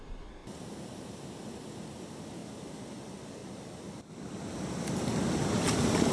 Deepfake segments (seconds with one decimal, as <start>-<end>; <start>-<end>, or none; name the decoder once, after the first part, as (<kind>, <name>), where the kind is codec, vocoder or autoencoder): 3.4-4.1 (vocoder, BigVGAN v2)